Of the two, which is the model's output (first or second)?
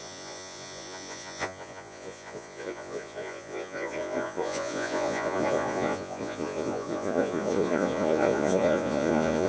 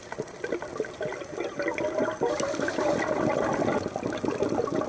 first